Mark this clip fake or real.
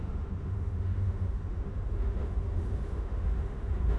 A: fake